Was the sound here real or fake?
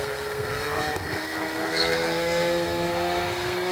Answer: fake